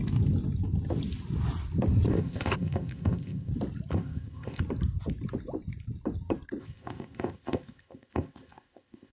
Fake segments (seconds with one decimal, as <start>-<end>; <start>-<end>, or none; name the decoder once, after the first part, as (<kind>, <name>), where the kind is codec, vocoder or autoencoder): 2.1-3.5 (codec, ZipCodec); 3.9-4.6; 6.6-9.1